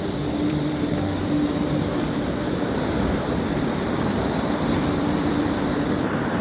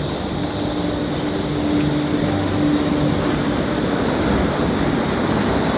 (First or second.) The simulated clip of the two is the first